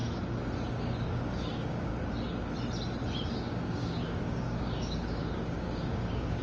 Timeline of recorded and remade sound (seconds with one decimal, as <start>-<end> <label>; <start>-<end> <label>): 0.0-0.7 recorded; 0.7-1.9 remade; 1.9-3.3 recorded; 3.3-6.4 remade